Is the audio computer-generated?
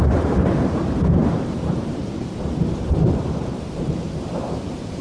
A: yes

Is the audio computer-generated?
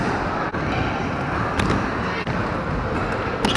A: no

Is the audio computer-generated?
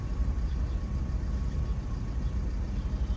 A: no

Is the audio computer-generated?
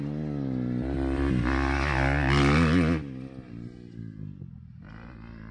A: no